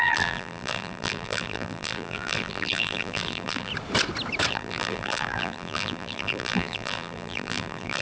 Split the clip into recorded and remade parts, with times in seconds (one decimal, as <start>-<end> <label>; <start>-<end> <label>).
0.0-3.7 remade; 3.7-4.5 recorded; 4.5-8.0 remade